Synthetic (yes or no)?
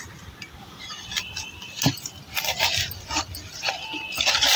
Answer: no